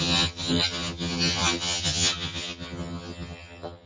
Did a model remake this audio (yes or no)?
yes